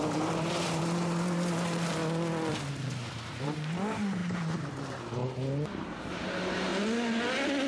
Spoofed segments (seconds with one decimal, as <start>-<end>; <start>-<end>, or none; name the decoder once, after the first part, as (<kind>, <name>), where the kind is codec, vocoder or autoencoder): 0.0-2.0 (vocoder, BigVGAN v2); 2.7-5.2; 6.0-6.7